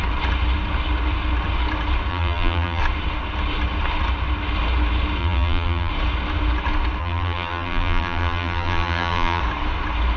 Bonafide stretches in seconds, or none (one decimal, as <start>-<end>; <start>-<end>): 0.0-2.1; 2.8-5.2; 5.9-7.0; 9.4-10.2